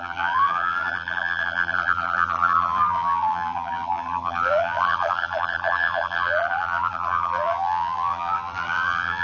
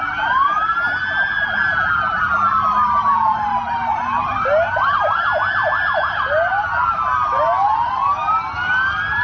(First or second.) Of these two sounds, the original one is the second